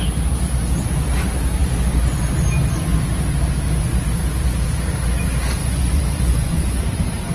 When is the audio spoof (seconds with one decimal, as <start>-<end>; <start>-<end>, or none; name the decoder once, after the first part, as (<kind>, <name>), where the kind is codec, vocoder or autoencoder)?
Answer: 5.6-6.8 (vocoder, Vocos)